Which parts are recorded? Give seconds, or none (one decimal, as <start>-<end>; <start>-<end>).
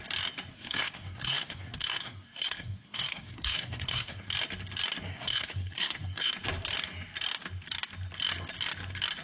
0.0-0.5; 4.3-5.1; 6.3-9.2